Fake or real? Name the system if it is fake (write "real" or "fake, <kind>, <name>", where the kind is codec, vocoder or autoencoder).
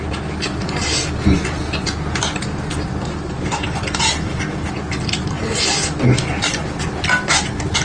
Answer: real